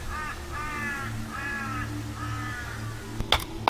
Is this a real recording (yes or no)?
yes